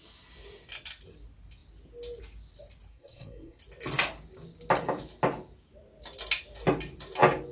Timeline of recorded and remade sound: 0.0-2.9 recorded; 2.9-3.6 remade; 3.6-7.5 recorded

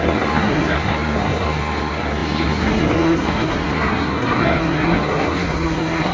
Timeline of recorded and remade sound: 0.0-6.1 remade